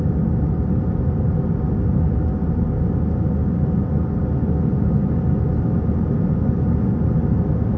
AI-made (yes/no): no